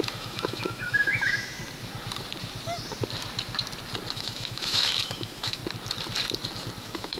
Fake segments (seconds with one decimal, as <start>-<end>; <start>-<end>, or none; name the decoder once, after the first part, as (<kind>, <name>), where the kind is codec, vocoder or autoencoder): 0.0-1.6 (autoencoder, DAC-VAE); 4.1-5.6; 6.8-7.2